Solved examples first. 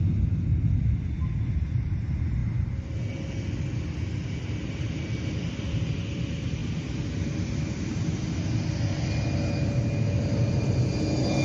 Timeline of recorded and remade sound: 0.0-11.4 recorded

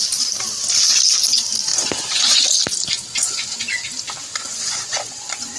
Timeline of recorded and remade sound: 0.0-1.7 recorded; 1.7-2.5 remade; 2.5-4.3 recorded; 4.3-5.6 remade

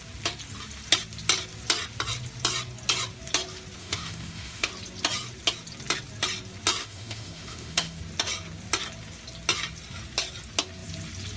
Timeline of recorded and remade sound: 0.0-3.8 recorded; 3.8-4.7 remade; 4.7-6.8 recorded; 6.8-8.0 remade; 8.0-11.4 recorded

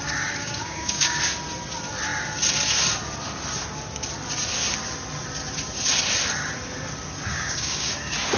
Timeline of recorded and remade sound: 0.0-0.4 recorded; 0.4-1.2 remade; 1.2-7.3 recorded; 7.3-7.9 remade; 7.9-8.4 recorded